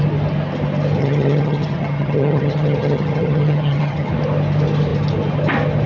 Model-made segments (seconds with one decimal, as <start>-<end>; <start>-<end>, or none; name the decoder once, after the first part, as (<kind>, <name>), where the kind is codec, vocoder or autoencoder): 1.0-4.1 (vocoder, HiFi-GAN)